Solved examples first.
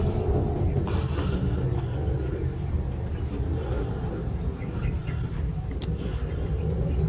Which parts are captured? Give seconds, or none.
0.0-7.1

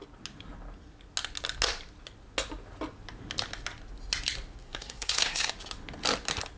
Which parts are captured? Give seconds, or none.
0.0-4.6; 5.5-6.6

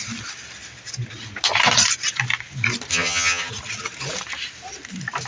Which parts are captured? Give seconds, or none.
0.0-2.9; 3.5-5.3

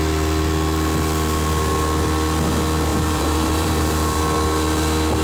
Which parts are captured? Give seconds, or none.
0.0-2.9; 4.2-5.2

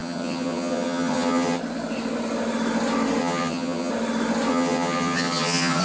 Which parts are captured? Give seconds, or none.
1.6-3.2; 3.9-4.5

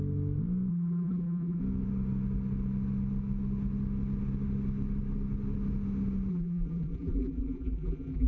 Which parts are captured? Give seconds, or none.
0.0-0.7; 1.6-6.3

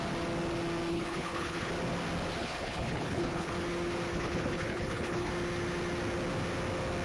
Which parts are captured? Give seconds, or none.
0.0-0.9; 1.7-2.4; 3.5-4.1; 5.3-7.0

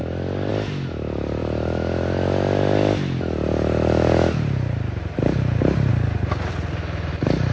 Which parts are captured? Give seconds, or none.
0.0-7.5